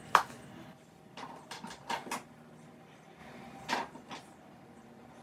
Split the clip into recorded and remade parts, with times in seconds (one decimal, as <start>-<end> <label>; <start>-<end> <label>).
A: 0.0-2.0 remade; 2.0-2.7 recorded; 2.7-3.2 remade; 3.2-3.7 recorded; 3.7-5.2 remade